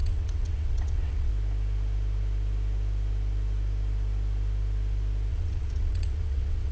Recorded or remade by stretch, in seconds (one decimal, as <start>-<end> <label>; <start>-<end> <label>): 0.0-1.3 remade; 1.3-5.3 recorded; 5.3-6.7 remade